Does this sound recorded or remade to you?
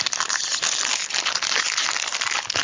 recorded